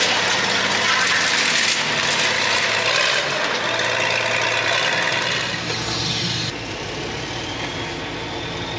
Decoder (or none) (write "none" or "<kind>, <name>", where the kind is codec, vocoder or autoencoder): none